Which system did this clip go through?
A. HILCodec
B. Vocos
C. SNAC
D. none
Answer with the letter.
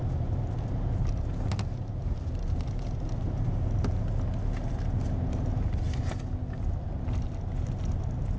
D